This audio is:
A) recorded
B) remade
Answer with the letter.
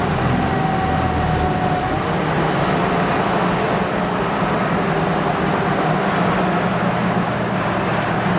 A